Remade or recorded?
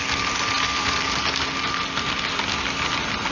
recorded